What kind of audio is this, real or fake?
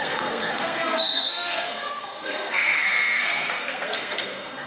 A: fake